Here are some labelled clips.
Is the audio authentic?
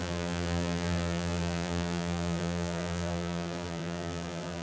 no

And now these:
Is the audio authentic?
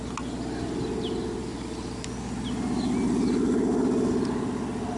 yes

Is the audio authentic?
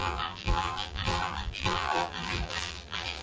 no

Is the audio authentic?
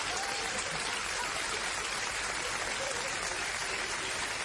no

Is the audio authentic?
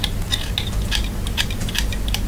yes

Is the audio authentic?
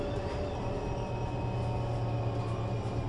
yes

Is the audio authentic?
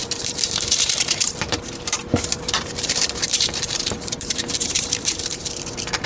no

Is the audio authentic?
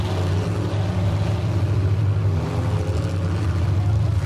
yes